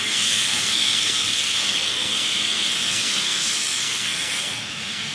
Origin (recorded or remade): remade